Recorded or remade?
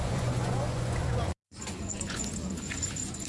remade